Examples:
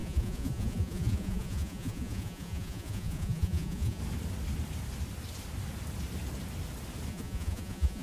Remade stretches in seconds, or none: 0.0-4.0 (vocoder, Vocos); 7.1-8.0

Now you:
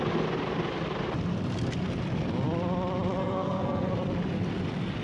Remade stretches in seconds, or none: 3.2-3.9 (codec, SNAC)